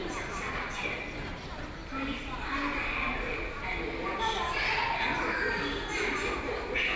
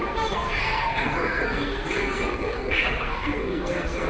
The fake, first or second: second